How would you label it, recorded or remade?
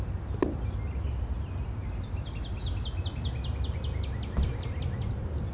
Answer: recorded